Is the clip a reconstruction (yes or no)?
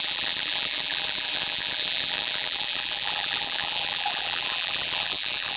yes